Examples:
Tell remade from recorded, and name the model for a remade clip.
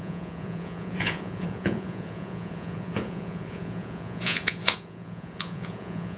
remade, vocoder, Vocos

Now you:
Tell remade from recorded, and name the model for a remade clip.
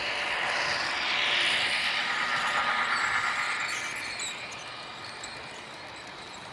recorded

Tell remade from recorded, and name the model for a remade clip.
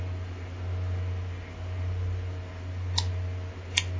recorded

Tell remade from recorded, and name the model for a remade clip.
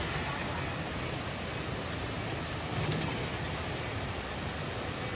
recorded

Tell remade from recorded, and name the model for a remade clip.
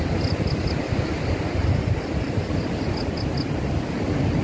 recorded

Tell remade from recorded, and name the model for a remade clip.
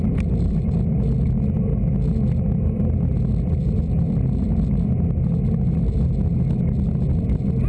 recorded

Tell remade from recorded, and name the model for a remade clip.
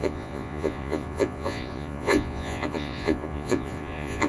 remade, vocoder, Vocos